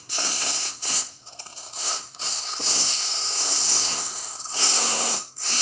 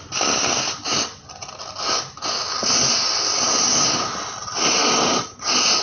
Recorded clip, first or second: second